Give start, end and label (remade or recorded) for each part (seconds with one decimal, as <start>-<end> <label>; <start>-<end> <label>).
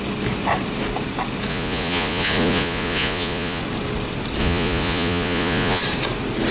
0.0-1.5 recorded; 1.5-3.6 remade; 3.6-4.4 recorded; 4.4-5.8 remade; 5.8-6.5 recorded